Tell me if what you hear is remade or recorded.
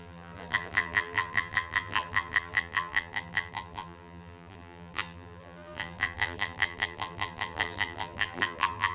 remade